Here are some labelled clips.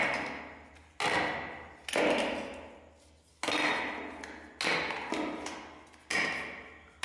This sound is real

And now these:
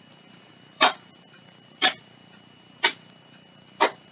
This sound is fake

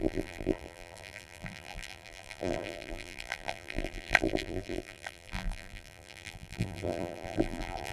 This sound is fake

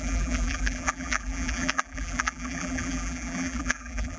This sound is fake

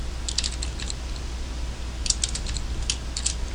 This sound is real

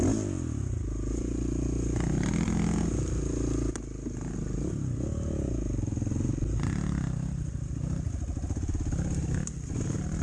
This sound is real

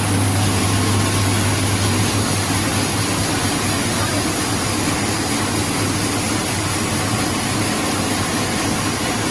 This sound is real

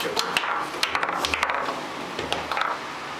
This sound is real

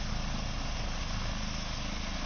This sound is real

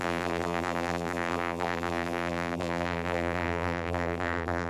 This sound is fake